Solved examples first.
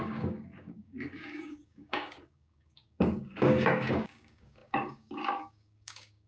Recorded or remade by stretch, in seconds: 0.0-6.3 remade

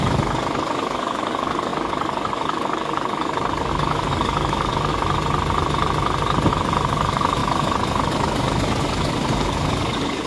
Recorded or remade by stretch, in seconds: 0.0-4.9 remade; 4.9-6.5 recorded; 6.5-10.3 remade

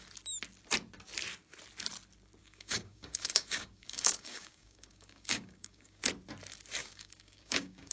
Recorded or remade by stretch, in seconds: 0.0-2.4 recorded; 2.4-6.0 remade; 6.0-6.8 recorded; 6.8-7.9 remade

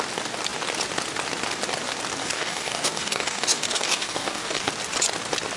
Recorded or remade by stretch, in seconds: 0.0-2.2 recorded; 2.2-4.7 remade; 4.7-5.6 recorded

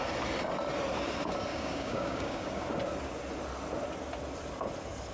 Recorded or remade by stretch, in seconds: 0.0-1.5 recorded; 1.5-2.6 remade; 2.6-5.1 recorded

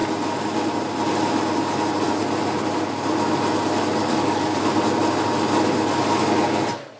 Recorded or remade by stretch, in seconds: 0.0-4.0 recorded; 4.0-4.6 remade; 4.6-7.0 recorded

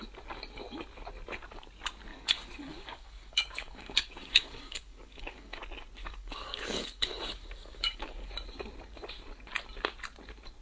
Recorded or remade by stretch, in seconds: 0.0-2.1 recorded; 2.1-5.6 remade; 5.6-6.0 recorded; 6.0-8.3 remade; 8.3-10.6 recorded

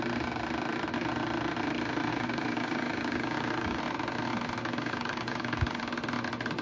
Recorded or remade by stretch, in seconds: 0.0-2.1 recorded; 2.1-3.8 remade; 3.8-4.6 recorded; 4.6-5.8 remade; 5.8-6.6 recorded